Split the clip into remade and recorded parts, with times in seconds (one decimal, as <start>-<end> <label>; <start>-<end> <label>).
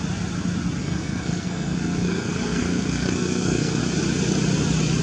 0.0-0.8 recorded; 0.8-3.8 remade; 3.8-5.0 recorded